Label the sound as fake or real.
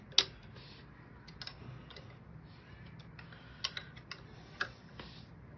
real